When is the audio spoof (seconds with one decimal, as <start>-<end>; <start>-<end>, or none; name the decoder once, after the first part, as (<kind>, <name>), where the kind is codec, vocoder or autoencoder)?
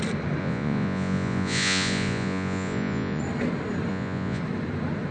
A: 0.4-3.2 (vocoder, Vocos); 3.9-4.4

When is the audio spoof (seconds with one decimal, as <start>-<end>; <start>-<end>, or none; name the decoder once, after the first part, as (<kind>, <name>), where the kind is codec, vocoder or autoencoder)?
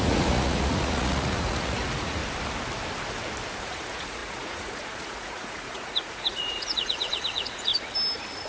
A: 0.0-2.2 (vocoder, Vocos); 3.6-7.7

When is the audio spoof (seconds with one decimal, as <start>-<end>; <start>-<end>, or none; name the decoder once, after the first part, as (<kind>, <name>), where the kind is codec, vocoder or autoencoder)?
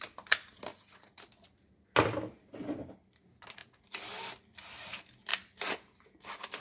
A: 0.7-1.2 (vocoder, Vocos)